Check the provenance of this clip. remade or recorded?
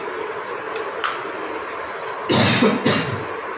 recorded